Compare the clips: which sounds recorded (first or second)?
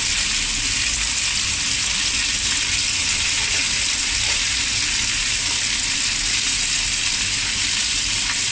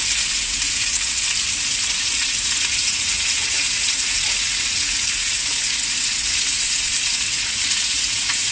first